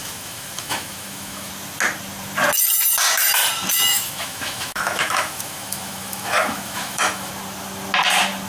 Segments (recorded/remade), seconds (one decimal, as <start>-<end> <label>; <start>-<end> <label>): 0.0-1.5 remade; 1.5-3.9 recorded; 3.9-7.3 remade; 7.3-8.5 recorded